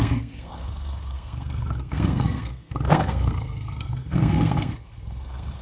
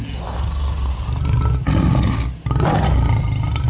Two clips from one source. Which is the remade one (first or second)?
first